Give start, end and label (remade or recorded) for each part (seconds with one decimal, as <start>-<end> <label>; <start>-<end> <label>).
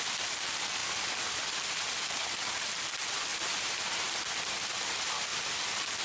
0.0-3.3 recorded; 3.3-4.3 remade; 4.3-6.0 recorded